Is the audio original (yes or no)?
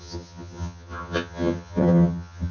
no